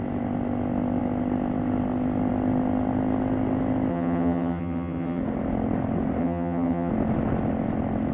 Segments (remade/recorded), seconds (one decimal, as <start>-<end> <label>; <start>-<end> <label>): 0.0-3.9 recorded; 3.9-5.2 remade; 5.2-6.2 recorded; 6.2-6.9 remade; 6.9-8.1 recorded